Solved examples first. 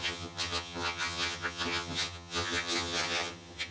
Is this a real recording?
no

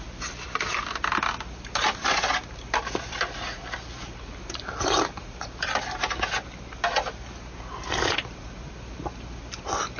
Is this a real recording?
yes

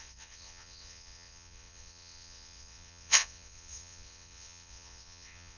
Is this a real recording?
no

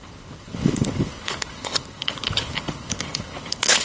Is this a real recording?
no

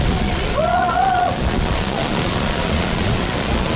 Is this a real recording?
no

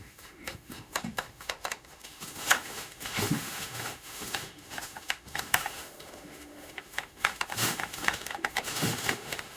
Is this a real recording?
no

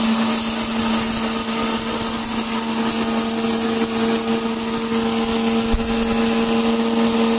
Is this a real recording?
yes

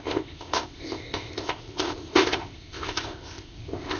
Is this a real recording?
no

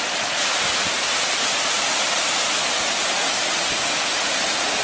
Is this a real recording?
yes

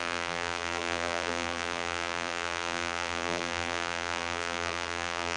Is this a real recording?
no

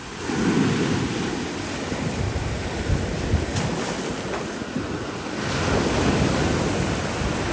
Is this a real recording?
yes